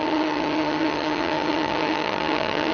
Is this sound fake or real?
fake